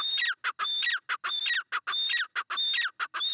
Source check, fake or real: real